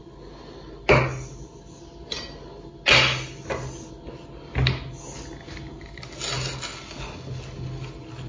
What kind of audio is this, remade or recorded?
recorded